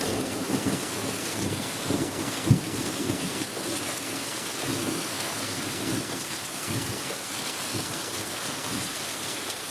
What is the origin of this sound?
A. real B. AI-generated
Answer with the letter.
B